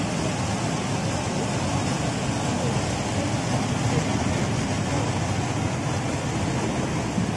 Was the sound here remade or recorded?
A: recorded